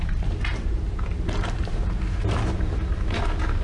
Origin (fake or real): fake